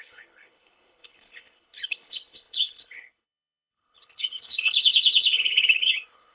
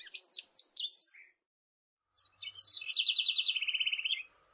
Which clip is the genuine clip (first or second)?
second